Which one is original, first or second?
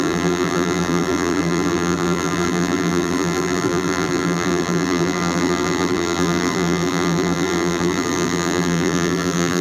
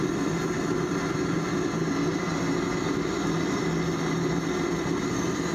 second